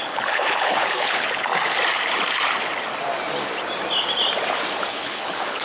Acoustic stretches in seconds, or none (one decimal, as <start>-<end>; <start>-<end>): 1.5-4.9